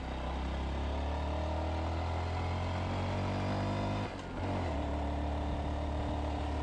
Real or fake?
real